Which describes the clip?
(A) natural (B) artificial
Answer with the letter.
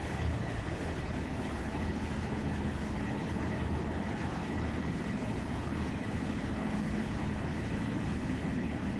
B